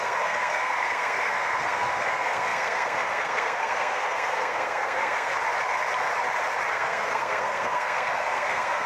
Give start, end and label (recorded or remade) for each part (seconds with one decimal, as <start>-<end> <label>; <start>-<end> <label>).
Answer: 0.0-5.3 remade; 5.3-6.7 recorded; 6.7-8.9 remade